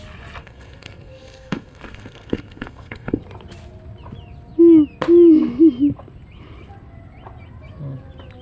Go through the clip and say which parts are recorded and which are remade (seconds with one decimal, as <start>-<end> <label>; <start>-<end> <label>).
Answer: 0.0-0.4 recorded; 0.4-3.2 remade; 3.2-8.4 recorded